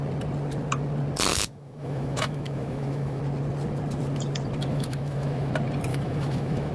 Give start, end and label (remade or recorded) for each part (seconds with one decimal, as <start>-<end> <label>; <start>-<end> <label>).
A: 0.0-1.3 recorded; 1.3-3.2 remade; 3.2-4.7 recorded; 4.7-5.5 remade; 5.5-5.9 recorded; 5.9-6.7 remade